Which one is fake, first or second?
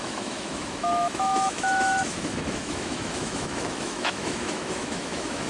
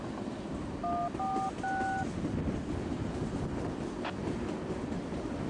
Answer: first